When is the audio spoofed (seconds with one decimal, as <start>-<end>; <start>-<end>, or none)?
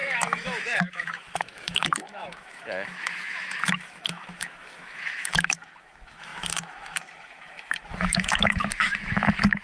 0.0-9.6